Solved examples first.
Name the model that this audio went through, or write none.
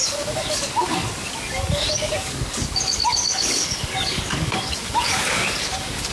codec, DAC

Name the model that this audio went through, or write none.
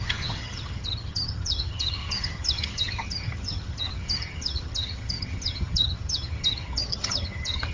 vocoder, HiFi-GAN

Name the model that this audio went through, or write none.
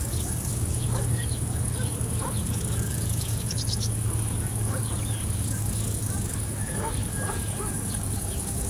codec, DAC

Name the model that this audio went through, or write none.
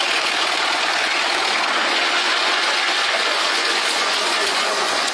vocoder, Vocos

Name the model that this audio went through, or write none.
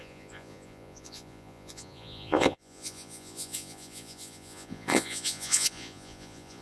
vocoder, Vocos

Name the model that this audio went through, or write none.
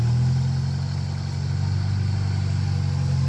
none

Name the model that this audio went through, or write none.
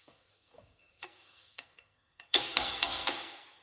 codec, SNAC